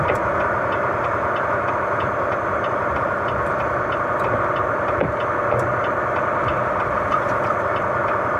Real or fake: real